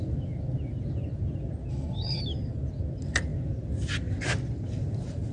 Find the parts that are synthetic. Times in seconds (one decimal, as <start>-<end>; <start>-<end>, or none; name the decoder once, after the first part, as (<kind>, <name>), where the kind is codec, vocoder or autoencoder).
1.7-2.2 (codec, HILCodec)